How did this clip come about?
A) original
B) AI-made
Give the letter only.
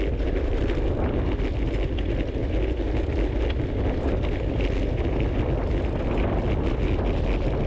A